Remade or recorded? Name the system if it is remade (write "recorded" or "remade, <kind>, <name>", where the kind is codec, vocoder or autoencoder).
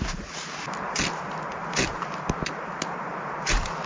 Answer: recorded